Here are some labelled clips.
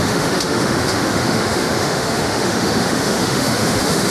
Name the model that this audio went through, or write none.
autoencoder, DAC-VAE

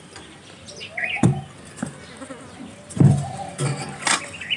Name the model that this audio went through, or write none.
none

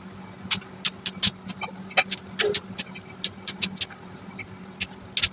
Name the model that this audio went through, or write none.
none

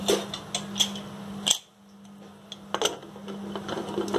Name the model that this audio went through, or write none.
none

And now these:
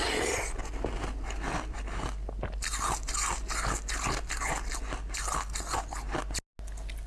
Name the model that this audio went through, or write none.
none